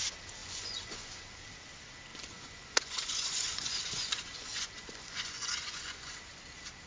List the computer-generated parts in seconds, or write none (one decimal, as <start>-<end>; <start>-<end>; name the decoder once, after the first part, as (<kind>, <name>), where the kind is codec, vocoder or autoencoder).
0.4-1.4 (vocoder, Vocos); 2.1-6.2